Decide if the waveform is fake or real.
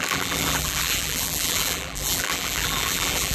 fake